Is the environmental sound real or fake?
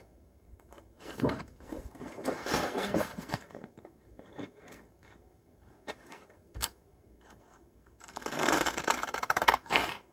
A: fake